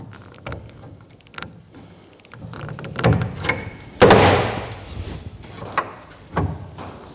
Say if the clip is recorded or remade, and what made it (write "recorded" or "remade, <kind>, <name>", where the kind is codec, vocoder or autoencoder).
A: recorded